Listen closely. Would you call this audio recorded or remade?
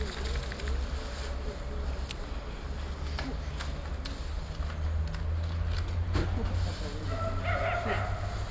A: recorded